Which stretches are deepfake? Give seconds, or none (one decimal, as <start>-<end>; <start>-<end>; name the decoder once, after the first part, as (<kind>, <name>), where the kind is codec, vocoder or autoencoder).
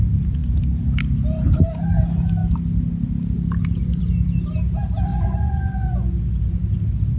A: 5.1-6.1 (vocoder, Vocos)